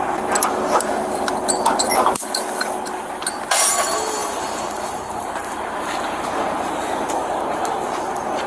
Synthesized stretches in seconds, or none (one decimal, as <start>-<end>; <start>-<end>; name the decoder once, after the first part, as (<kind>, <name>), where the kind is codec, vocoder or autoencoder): 1.9-2.4 (vocoder, BigVGAN v2); 4.2-5.6